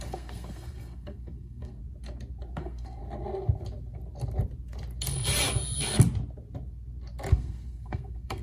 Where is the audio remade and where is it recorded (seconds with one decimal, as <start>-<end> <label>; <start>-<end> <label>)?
0.0-1.8 remade; 1.8-2.6 recorded; 2.6-3.0 remade; 3.0-7.3 recorded; 7.3-8.4 remade